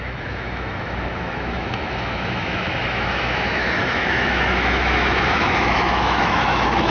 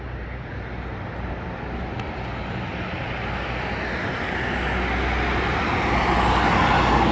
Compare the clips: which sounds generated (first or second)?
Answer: first